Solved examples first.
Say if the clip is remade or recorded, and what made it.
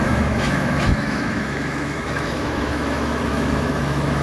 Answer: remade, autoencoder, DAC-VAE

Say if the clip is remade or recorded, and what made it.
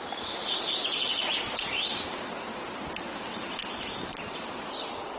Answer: recorded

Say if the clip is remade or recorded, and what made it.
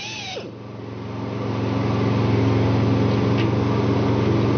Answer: recorded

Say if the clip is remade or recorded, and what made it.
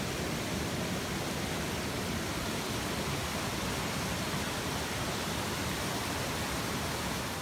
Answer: recorded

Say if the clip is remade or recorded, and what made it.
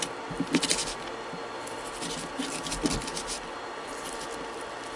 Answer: recorded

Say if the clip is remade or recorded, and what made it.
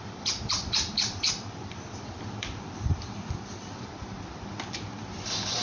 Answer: remade, vocoder, BigVGAN v2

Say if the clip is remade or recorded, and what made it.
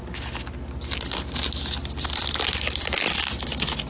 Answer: recorded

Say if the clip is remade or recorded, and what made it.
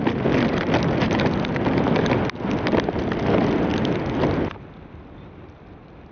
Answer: recorded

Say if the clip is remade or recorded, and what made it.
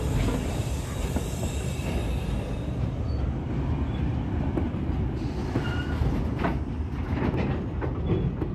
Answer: recorded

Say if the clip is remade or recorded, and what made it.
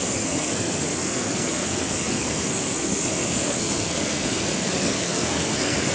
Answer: remade, codec, SNAC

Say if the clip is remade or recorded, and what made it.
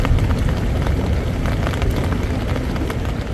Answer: recorded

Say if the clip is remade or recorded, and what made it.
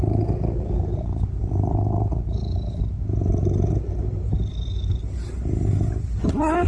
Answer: recorded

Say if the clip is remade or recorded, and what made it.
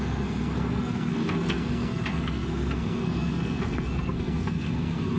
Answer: remade, codec, SNAC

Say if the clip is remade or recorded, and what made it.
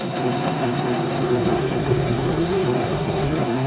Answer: remade, codec, SNAC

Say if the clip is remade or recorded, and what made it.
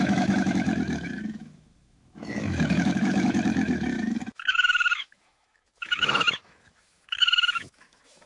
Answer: remade, autoencoder, DAC-VAE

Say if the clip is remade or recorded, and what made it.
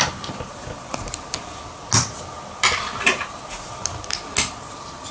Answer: recorded